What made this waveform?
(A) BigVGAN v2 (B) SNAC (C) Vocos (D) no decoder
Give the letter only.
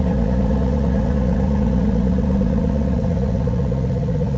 C